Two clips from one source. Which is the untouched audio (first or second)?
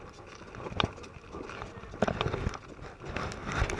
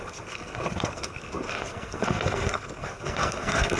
first